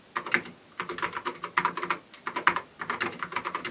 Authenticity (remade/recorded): recorded